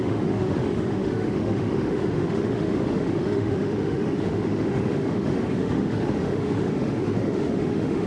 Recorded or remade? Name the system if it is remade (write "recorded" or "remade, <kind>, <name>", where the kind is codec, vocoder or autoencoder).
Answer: remade, autoencoder, DAC-VAE